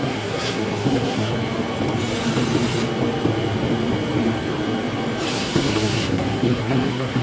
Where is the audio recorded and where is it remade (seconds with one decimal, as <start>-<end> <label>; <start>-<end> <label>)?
0.0-1.3 remade; 1.3-5.3 recorded; 5.3-7.2 remade

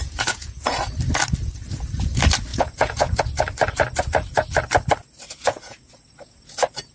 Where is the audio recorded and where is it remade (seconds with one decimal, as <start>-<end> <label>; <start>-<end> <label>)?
0.0-0.8 remade; 0.8-2.5 recorded; 2.5-3.2 remade; 3.2-5.4 recorded; 5.4-6.0 remade; 6.0-6.9 recorded

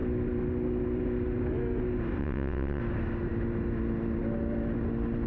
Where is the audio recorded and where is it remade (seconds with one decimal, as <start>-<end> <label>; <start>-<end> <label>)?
0.0-2.2 recorded; 2.2-2.8 remade; 2.8-5.3 recorded

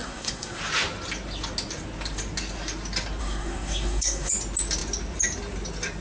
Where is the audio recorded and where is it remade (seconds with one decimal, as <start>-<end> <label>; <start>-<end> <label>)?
0.0-0.6 remade; 0.6-3.2 recorded; 3.2-4.3 remade; 4.3-6.0 recorded